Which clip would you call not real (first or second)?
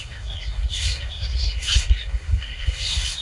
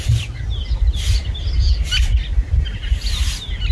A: first